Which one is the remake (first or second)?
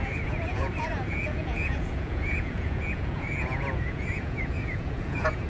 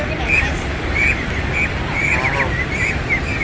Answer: first